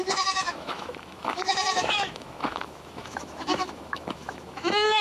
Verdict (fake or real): fake